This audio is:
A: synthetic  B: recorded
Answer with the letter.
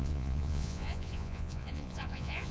A